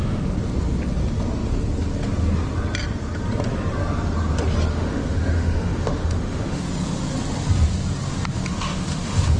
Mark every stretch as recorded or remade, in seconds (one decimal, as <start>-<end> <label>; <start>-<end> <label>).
0.0-4.7 recorded; 4.7-6.6 remade; 6.6-8.5 recorded; 8.5-9.4 remade